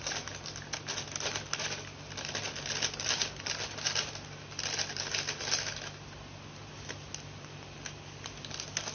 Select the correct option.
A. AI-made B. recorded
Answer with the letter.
B